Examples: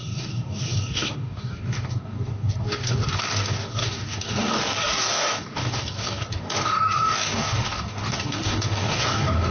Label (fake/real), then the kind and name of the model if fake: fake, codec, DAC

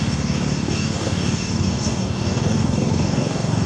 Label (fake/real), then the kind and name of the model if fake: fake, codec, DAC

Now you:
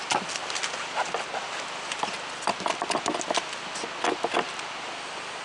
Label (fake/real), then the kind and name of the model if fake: real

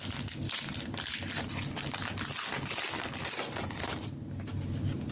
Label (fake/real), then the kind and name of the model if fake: real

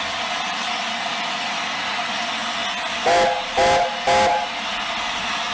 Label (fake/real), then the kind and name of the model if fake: real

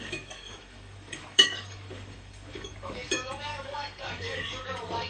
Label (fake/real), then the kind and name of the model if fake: fake, codec, DAC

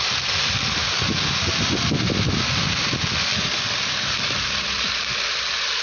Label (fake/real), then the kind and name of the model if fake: real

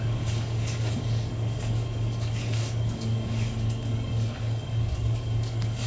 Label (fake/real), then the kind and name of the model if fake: fake, codec, DAC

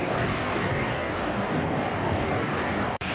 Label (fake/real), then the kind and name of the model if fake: fake, codec, DAC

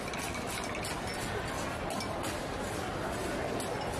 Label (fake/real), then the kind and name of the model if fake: real